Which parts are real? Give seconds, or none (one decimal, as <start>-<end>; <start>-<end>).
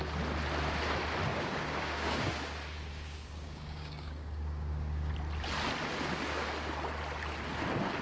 0.0-1.3; 2.3-2.9; 5.1-8.0